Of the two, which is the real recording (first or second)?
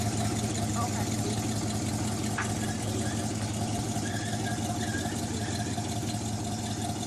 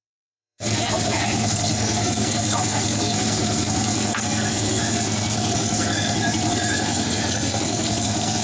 first